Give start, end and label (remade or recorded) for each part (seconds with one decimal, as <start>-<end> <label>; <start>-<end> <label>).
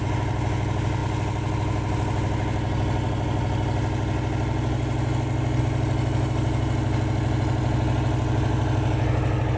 0.0-9.6 recorded